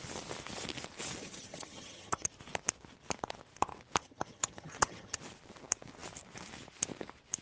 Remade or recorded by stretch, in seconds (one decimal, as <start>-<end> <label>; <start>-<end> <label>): 0.0-1.2 recorded; 1.2-2.3 remade; 2.3-4.0 recorded; 4.0-5.2 remade; 5.2-7.4 recorded